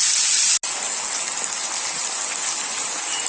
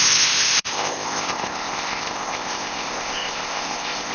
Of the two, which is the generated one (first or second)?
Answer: second